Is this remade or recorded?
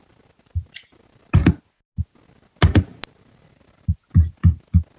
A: recorded